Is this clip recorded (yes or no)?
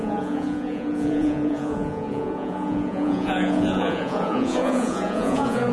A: no